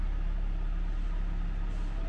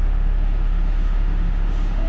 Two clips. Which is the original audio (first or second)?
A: first